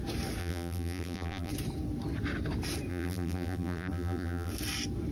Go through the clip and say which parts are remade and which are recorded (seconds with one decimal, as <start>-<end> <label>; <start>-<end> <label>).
0.0-0.4 recorded; 0.4-1.5 remade; 1.5-2.9 recorded; 2.9-4.5 remade; 4.5-5.1 recorded